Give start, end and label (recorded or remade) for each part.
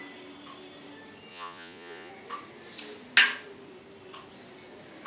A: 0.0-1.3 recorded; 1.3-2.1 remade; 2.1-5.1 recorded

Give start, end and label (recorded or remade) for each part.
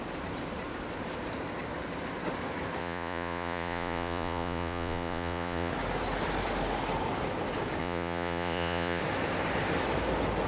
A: 0.0-2.8 recorded; 2.8-5.7 remade; 5.7-7.8 recorded; 7.8-9.0 remade; 9.0-10.5 recorded